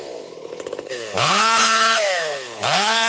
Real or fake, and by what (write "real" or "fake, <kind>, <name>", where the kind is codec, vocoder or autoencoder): fake, codec, HILCodec